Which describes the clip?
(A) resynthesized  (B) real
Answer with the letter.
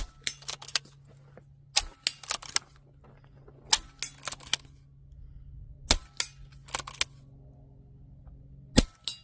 B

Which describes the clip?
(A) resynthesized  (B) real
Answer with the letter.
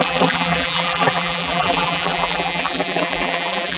A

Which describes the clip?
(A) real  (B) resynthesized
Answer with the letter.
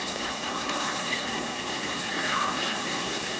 B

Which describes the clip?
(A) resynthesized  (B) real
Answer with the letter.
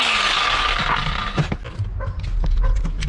B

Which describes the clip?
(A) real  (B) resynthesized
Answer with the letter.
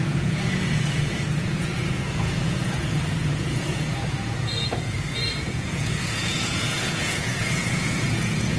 B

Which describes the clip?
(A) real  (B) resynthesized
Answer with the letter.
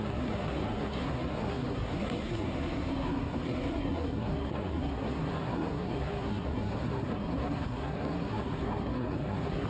B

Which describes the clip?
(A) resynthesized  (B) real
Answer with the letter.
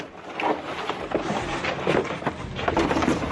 B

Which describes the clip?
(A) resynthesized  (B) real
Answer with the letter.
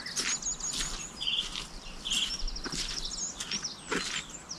B